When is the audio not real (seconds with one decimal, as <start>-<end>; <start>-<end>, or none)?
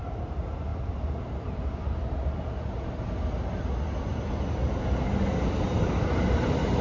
none